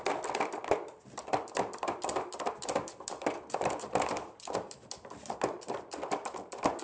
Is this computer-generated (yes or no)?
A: yes